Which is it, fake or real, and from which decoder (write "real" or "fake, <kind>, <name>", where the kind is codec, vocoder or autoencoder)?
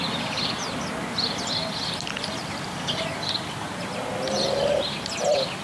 real